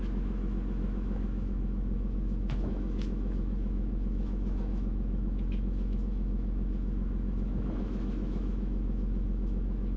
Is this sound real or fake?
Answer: fake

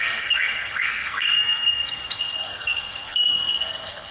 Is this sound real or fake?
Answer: fake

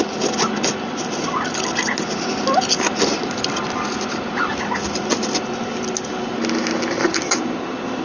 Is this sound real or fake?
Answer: real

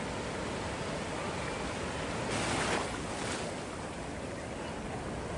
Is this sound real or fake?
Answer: real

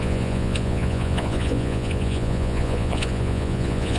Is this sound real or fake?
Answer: fake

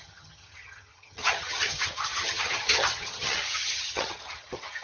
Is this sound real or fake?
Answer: fake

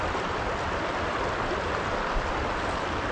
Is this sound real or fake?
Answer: real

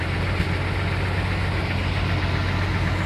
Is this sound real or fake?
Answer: real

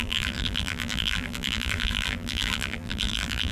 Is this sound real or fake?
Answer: fake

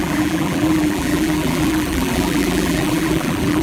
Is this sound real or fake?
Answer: fake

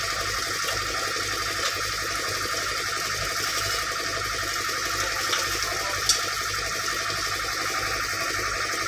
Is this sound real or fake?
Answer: real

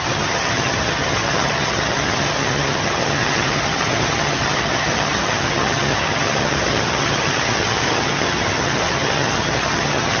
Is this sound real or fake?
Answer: fake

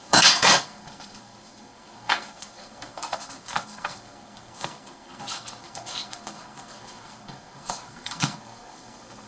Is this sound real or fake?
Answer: fake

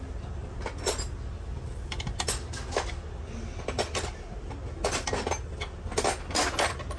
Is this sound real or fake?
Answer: real